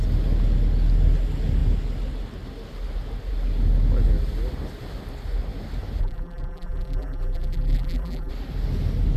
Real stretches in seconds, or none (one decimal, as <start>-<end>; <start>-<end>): 0.0-6.0; 8.3-9.2